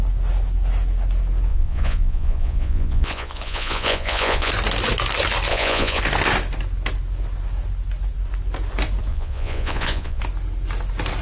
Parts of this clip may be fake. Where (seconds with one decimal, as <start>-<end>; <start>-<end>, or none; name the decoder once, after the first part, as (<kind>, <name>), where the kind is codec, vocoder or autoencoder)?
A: 1.5-4.5 (vocoder, Vocos); 5.5-6.0; 9.1-10.2